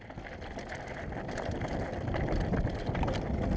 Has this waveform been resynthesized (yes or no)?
no